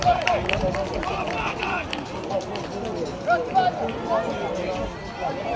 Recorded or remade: recorded